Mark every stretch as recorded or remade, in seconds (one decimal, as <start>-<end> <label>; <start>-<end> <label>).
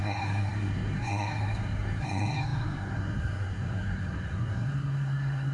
0.0-5.5 remade